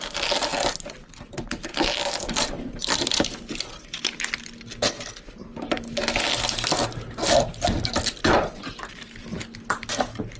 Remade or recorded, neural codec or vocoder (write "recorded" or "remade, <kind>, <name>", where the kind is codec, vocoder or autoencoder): recorded